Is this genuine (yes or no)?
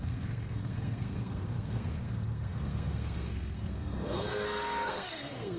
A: no